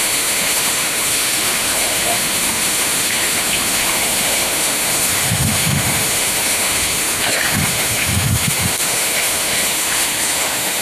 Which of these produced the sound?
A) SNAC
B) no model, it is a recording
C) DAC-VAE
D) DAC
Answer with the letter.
C